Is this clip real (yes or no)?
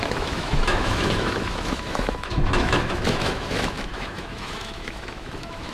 no